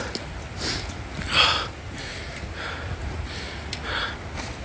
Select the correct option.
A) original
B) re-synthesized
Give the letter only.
A